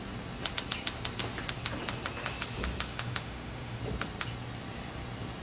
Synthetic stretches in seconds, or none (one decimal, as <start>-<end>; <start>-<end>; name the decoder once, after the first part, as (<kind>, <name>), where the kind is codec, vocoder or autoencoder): 2.9-3.8 (autoencoder, DAC-VAE)